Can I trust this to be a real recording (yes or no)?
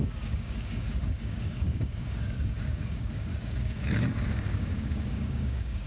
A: no